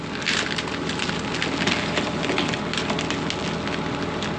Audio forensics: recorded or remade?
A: recorded